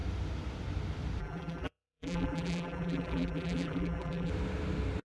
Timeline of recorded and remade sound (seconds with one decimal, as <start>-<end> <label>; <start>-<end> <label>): 0.0-1.2 recorded; 1.2-4.3 remade; 4.3-5.2 recorded